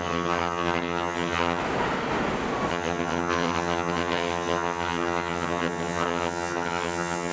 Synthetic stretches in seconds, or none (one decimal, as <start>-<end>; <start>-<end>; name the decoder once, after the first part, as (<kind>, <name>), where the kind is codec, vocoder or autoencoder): 0.0-1.6 (vocoder, HiFi-GAN); 2.7-7.3